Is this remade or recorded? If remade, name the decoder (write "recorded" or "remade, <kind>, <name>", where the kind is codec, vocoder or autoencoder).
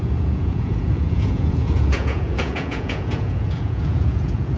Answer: remade, vocoder, Vocos